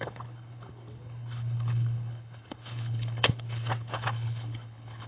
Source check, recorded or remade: remade